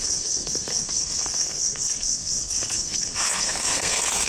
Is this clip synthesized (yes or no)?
yes